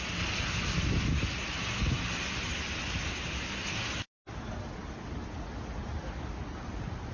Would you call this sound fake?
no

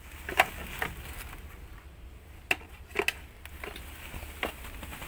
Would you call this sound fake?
no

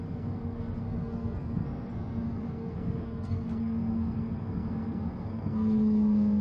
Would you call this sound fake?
yes